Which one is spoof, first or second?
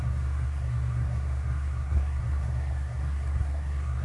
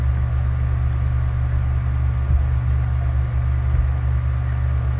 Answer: first